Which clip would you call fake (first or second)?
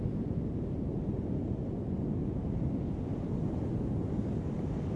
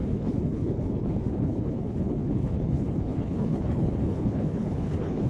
second